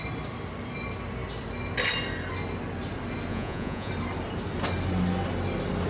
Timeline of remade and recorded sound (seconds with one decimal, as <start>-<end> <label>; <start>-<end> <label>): 0.0-3.3 recorded; 3.3-3.9 remade; 3.9-5.9 recorded